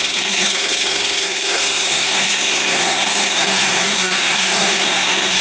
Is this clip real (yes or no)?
no